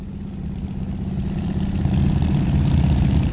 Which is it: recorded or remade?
recorded